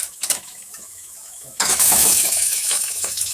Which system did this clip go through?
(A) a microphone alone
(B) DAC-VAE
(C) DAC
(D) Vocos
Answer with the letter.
B